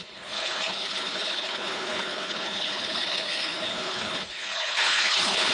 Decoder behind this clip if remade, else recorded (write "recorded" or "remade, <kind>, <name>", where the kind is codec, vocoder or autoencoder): remade, codec, HILCodec